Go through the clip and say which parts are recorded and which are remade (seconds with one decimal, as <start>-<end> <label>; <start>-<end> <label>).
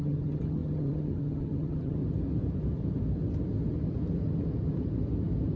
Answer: 0.0-2.0 remade; 2.0-5.6 recorded